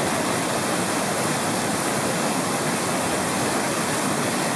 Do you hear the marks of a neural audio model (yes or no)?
no